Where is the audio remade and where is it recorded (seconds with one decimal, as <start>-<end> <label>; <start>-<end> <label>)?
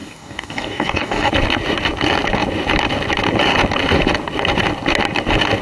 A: 0.0-1.3 remade; 1.3-5.6 recorded